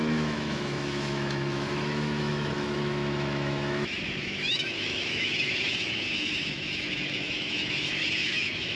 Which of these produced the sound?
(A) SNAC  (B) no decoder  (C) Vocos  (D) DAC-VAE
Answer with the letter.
D